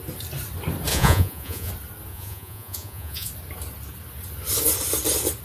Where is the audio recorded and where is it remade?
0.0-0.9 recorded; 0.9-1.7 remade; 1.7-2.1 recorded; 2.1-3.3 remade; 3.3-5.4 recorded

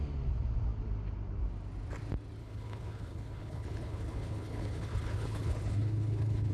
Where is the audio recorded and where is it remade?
0.0-2.4 recorded; 2.4-6.5 remade

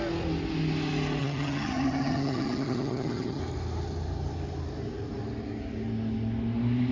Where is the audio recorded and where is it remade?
0.0-1.2 recorded; 1.2-3.4 remade; 3.4-6.9 recorded

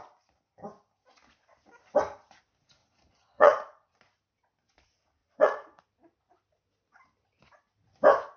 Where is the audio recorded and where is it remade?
0.0-2.8 recorded; 2.8-4.0 remade; 4.0-5.2 recorded; 5.2-5.8 remade; 5.8-8.4 recorded